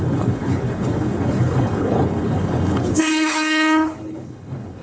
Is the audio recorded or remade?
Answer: remade